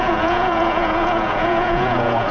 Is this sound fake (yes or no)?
yes